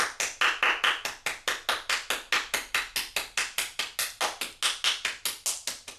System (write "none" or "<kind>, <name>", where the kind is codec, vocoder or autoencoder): none